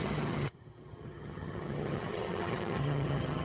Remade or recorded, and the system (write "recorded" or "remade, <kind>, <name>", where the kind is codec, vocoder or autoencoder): remade, vocoder, HiFi-GAN